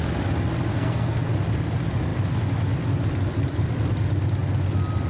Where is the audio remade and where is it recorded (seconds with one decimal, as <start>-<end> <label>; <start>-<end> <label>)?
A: 0.0-0.7 recorded; 0.7-1.3 remade; 1.3-5.1 recorded

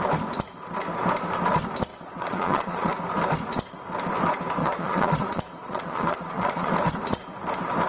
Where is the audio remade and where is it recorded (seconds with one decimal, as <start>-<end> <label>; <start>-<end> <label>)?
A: 0.0-1.9 recorded; 1.9-2.9 remade; 2.9-4.6 recorded; 4.6-6.7 remade; 6.7-7.9 recorded

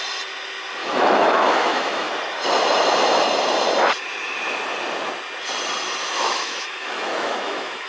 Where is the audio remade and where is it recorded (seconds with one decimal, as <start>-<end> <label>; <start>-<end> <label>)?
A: 0.0-0.8 recorded; 0.8-2.1 remade; 2.1-6.0 recorded; 6.0-7.9 remade

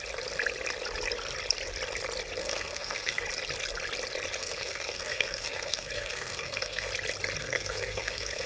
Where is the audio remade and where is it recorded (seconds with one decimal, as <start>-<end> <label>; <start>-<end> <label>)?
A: 0.0-2.4 recorded; 2.4-3.2 remade; 3.2-4.4 recorded; 4.4-6.9 remade; 6.9-7.4 recorded; 7.4-8.5 remade